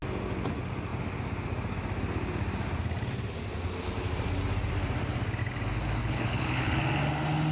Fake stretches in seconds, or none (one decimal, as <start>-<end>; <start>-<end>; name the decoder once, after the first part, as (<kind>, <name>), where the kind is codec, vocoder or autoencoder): 6.0-6.8 (codec, HILCodec)